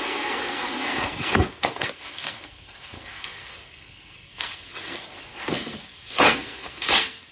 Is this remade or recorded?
remade